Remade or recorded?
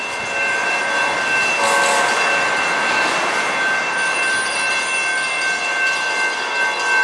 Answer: recorded